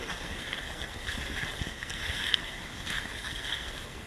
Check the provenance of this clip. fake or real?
fake